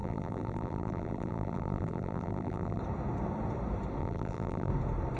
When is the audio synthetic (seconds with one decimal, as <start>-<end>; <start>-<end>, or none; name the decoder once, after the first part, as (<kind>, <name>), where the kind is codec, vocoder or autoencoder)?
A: 0.0-2.8 (vocoder, BigVGAN v2); 4.0-4.7